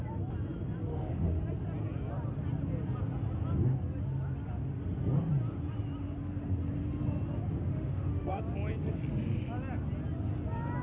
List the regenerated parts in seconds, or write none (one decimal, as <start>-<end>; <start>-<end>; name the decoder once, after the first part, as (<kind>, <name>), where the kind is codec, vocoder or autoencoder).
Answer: 0.9-1.4 (autoencoder, DAC-VAE); 7.7-8.4